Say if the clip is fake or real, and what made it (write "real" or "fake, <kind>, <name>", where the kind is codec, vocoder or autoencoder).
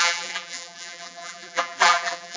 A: fake, vocoder, BigVGAN v2